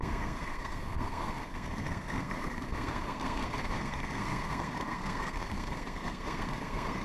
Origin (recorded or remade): remade